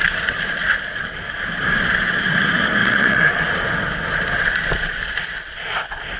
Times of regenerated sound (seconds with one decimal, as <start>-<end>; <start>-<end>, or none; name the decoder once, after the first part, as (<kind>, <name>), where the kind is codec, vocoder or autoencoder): 2.8-3.4 (vocoder, WaveNeXt)